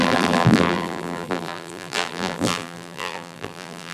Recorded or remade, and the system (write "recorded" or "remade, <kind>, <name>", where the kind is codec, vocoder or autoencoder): remade, vocoder, BigVGAN v2